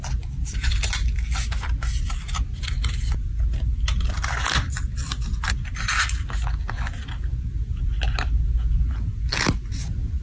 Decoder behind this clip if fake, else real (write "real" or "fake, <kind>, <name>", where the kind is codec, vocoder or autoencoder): real